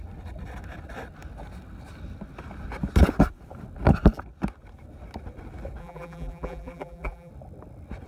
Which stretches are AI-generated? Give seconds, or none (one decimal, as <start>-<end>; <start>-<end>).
5.8-7.3